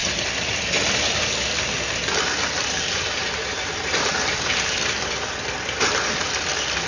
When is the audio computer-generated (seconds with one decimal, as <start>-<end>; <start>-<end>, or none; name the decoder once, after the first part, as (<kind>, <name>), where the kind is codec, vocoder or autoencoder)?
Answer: 0.0-6.9 (vocoder, BigVGAN v2)